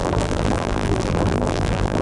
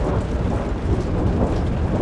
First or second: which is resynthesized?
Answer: first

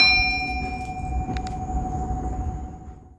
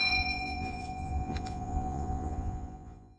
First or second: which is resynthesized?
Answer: second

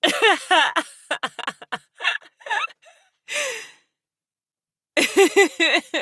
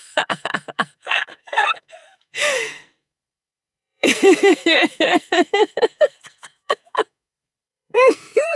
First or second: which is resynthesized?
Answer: second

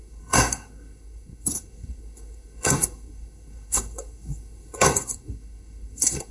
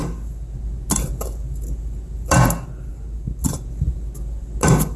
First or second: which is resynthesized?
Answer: first